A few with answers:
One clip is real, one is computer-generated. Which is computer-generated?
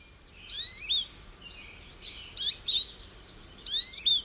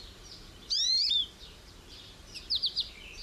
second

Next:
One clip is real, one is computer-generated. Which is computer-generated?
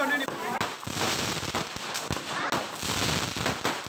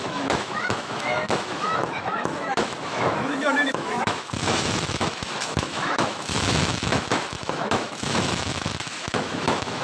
second